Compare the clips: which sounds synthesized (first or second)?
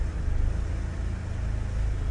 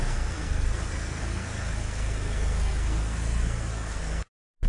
second